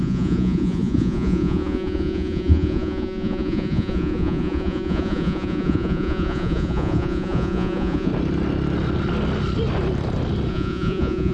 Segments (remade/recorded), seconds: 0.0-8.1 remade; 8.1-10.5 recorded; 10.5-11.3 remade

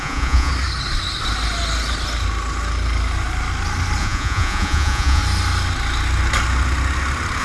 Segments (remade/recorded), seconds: 0.0-0.5 remade; 0.5-4.0 recorded; 4.0-5.2 remade; 5.2-7.4 recorded

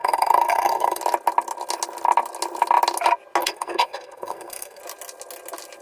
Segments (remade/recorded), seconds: 0.0-1.0 remade; 1.0-3.4 recorded; 3.4-4.8 remade; 4.8-5.8 recorded

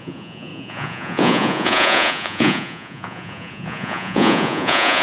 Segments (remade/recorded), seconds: 0.0-5.0 remade

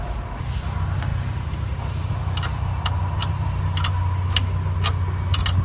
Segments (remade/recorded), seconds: 0.0-1.1 recorded; 1.1-3.6 remade; 3.6-5.6 recorded

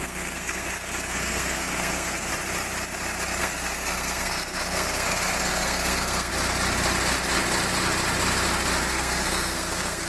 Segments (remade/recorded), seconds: 0.0-2.3 remade; 2.3-3.4 recorded; 3.4-6.3 remade; 6.3-8.9 recorded; 8.9-10.1 remade

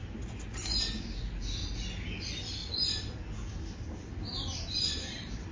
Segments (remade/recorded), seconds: 0.0-1.2 recorded; 1.2-1.6 remade; 1.6-2.2 recorded; 2.2-5.5 remade